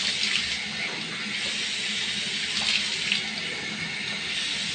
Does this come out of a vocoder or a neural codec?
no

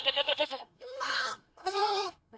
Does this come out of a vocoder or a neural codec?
yes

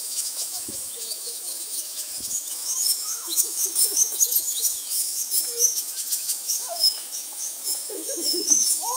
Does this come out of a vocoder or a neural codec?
yes